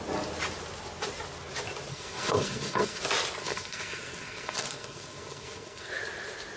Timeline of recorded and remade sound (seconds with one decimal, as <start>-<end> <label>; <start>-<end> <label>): 0.0-1.9 recorded; 1.9-3.0 remade; 3.0-3.4 recorded; 3.4-5.9 remade; 5.9-6.6 recorded